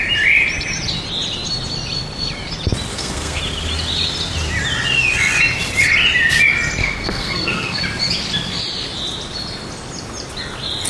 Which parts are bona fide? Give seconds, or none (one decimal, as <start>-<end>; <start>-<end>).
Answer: 0.0-2.9; 3.4-6.8; 7.8-10.9